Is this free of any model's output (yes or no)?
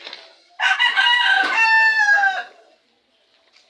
yes